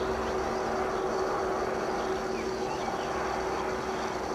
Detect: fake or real real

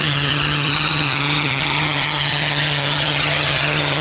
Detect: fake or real fake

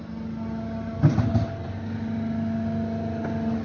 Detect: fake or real real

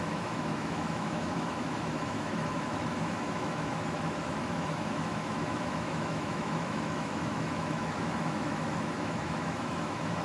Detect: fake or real fake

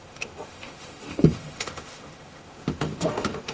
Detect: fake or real fake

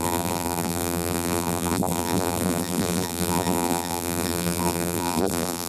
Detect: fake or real fake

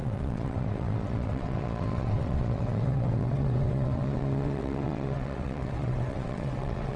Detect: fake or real fake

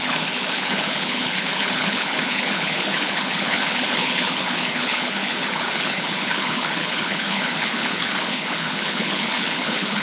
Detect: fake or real fake